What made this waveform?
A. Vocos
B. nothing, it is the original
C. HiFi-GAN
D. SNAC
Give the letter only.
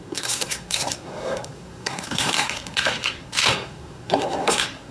D